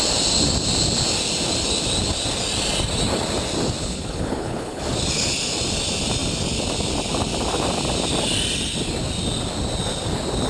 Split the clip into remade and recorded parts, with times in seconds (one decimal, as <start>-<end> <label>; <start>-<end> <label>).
0.0-3.8 recorded; 3.8-4.8 remade; 4.8-10.5 recorded